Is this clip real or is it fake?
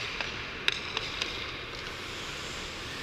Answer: real